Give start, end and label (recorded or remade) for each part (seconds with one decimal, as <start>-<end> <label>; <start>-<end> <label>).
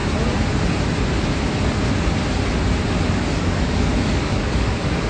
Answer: 0.0-3.1 recorded; 3.1-5.1 remade